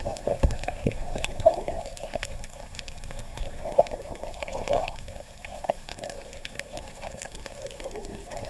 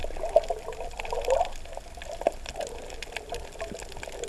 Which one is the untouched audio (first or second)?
second